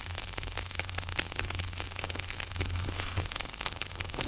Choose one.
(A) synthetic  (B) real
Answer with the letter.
A